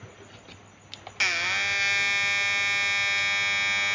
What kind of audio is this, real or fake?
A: real